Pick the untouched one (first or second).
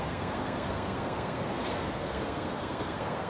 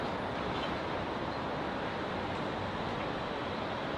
second